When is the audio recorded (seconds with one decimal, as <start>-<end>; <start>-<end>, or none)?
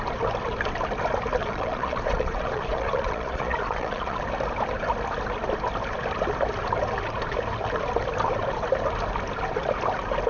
0.0-1.4; 4.2-10.3